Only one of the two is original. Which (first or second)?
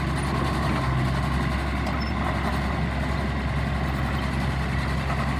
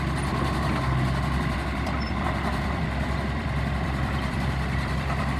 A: first